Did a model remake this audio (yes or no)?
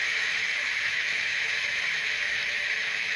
yes